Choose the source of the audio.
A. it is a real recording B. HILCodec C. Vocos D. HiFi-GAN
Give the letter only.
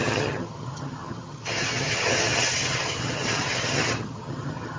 D